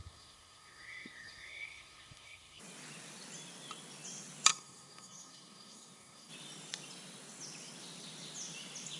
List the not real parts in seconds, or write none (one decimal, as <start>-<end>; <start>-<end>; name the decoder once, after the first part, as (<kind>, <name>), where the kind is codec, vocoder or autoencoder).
0.0-2.6 (codec, SNAC); 4.5-6.3